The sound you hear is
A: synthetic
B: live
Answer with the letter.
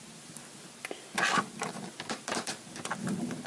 B